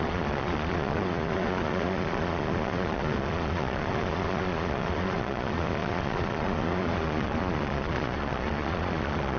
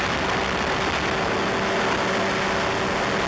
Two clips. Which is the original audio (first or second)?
second